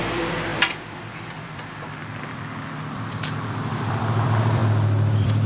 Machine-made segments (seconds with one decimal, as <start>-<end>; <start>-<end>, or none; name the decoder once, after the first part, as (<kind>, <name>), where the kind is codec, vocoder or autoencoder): 0.0-4.6 (vocoder, BigVGAN v2); 5.1-5.5

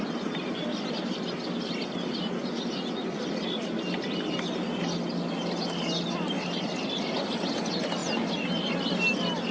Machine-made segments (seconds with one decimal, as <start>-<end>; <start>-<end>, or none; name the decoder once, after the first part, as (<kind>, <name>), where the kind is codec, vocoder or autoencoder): none

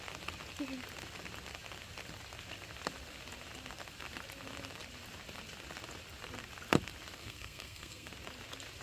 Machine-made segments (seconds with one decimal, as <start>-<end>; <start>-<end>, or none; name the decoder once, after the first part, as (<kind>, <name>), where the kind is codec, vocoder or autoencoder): 7.2-8.1 (codec, SNAC)

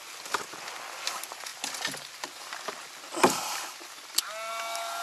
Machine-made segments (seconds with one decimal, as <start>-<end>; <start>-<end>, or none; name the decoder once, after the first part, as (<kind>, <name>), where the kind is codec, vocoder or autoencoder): none